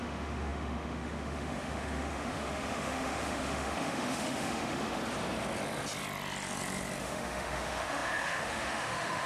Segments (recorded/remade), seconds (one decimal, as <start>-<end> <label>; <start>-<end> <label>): 0.0-5.0 remade; 5.0-7.0 recorded; 7.0-9.3 remade